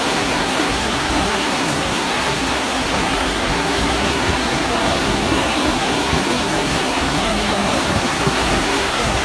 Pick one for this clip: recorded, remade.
remade